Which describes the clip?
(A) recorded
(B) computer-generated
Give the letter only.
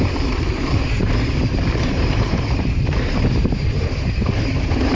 B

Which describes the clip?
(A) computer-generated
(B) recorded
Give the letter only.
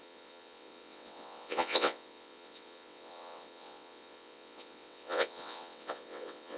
A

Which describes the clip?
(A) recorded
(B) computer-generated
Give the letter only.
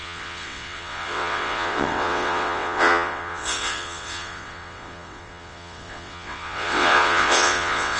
B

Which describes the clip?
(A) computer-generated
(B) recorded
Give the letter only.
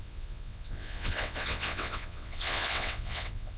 A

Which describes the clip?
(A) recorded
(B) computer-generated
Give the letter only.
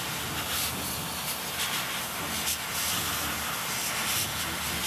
A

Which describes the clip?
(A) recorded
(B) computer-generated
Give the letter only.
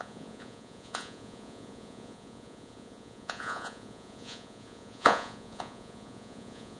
B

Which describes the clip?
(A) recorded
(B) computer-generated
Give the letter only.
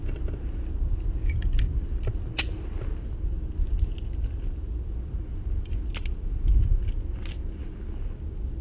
A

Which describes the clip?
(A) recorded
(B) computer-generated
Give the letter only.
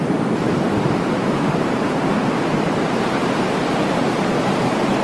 B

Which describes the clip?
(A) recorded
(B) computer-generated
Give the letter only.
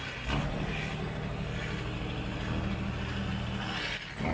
A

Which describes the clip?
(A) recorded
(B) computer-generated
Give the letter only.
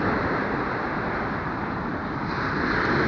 A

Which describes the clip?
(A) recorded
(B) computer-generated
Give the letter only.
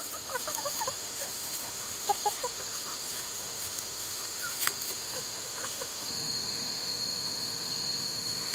B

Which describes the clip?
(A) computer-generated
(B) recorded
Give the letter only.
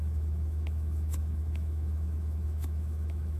A